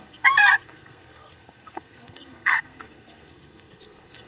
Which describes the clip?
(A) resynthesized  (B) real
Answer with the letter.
A